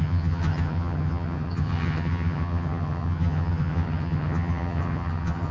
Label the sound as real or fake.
fake